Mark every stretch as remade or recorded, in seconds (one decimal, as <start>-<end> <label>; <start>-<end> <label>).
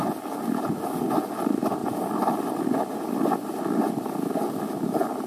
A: 0.0-5.3 recorded